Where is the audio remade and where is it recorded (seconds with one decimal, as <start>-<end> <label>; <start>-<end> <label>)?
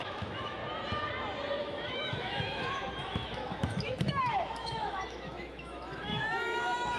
0.0-0.6 remade; 0.6-1.6 recorded; 1.6-7.0 remade